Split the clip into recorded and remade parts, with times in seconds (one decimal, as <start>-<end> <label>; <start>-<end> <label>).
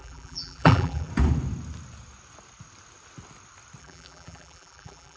0.0-1.1 remade; 1.1-3.8 recorded; 3.8-5.2 remade